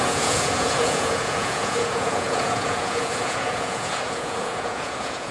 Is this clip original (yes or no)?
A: no